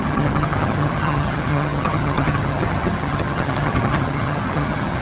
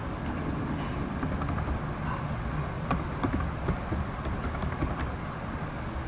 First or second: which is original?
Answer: second